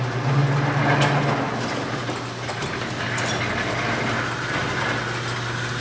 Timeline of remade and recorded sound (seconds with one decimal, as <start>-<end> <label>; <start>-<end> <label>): 0.0-5.8 recorded